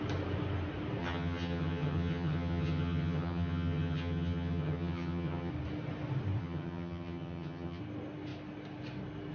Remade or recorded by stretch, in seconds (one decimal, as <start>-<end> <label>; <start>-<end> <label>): 0.0-1.0 recorded; 1.0-5.5 remade; 5.5-6.4 recorded; 6.4-7.8 remade; 7.8-9.3 recorded